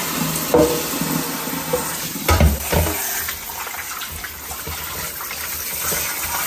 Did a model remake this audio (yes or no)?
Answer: no